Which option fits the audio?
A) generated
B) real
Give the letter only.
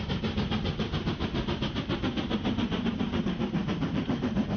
A